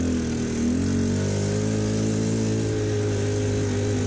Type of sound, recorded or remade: recorded